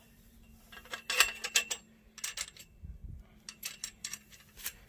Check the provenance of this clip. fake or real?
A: real